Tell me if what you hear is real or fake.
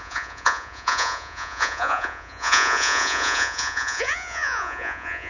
fake